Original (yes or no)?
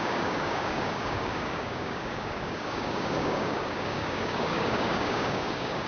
no